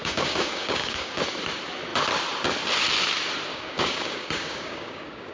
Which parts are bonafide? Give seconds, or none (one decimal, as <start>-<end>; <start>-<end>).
1.2-3.5

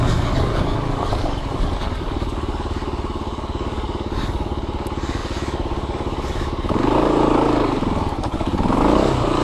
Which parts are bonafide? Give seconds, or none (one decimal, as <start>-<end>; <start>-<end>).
none